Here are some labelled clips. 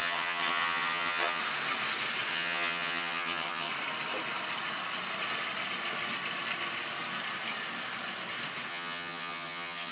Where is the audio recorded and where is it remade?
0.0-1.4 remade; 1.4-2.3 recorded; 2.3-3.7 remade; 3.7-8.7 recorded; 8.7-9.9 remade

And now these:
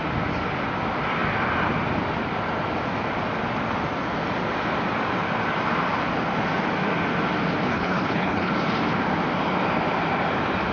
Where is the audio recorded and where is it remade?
0.0-7.7 recorded; 7.7-8.5 remade; 8.5-10.7 recorded

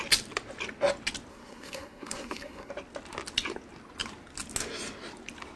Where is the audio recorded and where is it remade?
0.0-1.3 recorded; 1.3-2.7 remade; 2.7-5.6 recorded

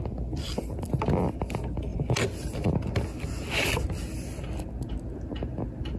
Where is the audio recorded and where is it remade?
0.0-6.0 recorded

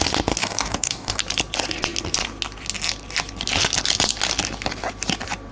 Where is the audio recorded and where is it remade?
0.0-0.4 recorded; 0.4-1.2 remade; 1.2-5.5 recorded

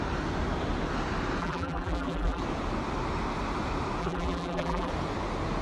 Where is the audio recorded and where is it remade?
0.0-1.4 recorded; 1.4-2.4 remade; 2.4-4.0 recorded; 4.0-4.9 remade; 4.9-5.6 recorded

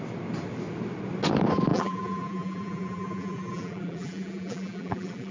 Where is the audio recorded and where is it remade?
0.0-1.7 recorded; 1.7-5.3 remade

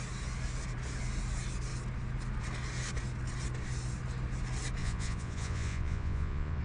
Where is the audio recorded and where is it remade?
0.0-4.8 recorded; 4.8-6.6 remade